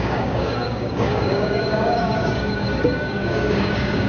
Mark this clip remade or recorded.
remade